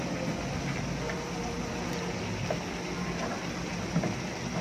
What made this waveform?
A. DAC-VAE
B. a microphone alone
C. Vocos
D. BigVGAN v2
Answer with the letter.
B